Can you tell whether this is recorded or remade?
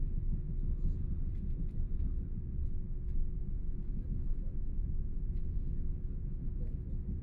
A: recorded